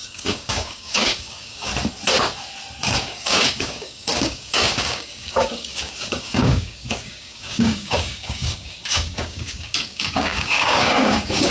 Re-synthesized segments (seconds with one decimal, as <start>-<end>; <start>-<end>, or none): 0.0-1.7; 2.8-11.5